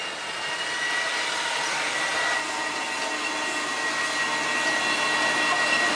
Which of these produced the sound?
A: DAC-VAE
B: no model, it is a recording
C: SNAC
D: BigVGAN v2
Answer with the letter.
B